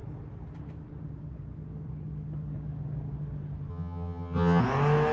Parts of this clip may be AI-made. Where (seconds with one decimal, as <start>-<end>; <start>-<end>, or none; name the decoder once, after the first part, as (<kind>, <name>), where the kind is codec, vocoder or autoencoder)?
3.7-4.6 (vocoder, HiFi-GAN)